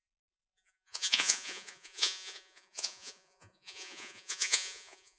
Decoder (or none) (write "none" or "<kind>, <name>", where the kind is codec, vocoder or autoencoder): vocoder, Vocos